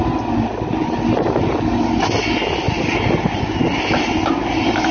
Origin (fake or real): real